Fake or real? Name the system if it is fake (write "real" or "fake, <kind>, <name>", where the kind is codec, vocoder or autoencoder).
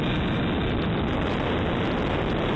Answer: real